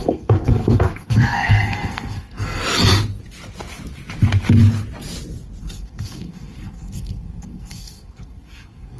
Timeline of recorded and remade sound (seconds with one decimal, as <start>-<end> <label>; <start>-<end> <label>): 0.0-2.6 remade; 2.6-5.6 recorded; 5.6-9.0 remade